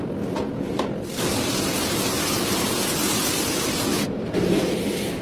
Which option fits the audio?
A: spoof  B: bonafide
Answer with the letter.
B